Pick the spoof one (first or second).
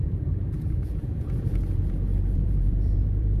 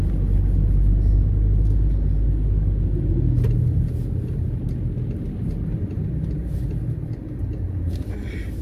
first